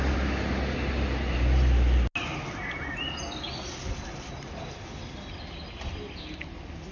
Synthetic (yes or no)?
no